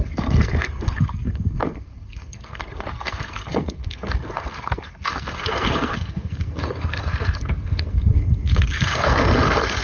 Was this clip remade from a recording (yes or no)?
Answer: yes